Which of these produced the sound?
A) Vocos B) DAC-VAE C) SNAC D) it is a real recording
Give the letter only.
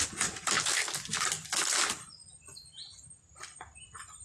D